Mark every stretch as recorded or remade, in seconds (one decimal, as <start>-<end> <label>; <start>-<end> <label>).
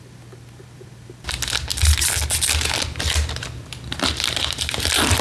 0.0-5.2 recorded